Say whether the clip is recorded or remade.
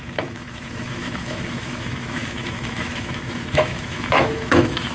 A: remade